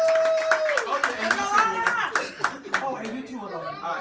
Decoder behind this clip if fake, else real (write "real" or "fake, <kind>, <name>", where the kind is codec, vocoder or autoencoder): real